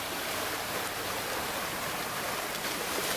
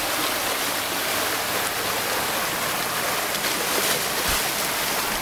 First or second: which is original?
second